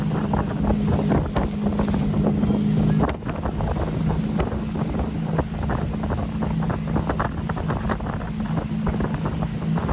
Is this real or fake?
real